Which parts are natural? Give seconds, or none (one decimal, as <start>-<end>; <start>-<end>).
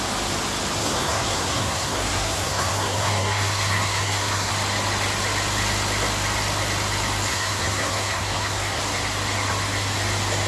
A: 0.0-0.8; 4.5-7.3; 8.8-10.5